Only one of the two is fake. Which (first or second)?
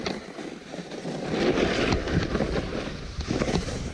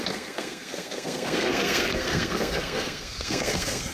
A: second